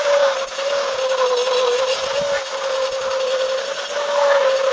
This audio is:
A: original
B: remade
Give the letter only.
A